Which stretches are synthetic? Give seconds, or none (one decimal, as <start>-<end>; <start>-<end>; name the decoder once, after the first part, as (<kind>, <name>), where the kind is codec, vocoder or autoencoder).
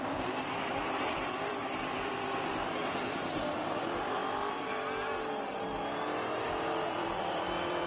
0.0-1.5 (vocoder, BigVGAN v2); 2.8-4.2; 6.4-7.9